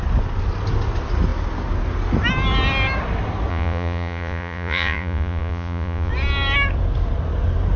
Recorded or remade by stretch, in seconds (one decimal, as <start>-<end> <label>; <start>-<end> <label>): 0.0-3.5 recorded; 3.5-6.1 remade; 6.1-7.8 recorded